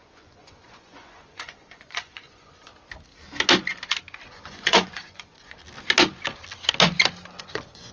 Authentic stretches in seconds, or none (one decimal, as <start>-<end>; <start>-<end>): 2.7-4.3; 5.6-7.4